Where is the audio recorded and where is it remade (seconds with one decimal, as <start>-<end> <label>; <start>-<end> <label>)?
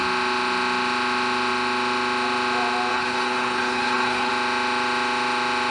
0.0-2.9 recorded; 2.9-4.3 remade; 4.3-5.7 recorded